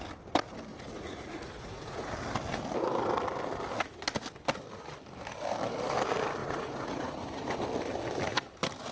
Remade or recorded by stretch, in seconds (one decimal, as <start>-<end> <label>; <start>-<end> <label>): 0.0-0.7 recorded; 0.7-2.1 remade; 2.1-6.4 recorded; 6.4-7.6 remade; 7.6-8.9 recorded